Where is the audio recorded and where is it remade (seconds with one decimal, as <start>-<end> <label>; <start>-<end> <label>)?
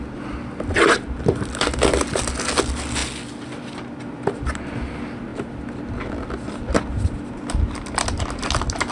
0.0-8.9 recorded